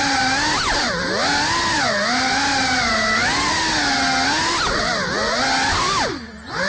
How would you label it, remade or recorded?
recorded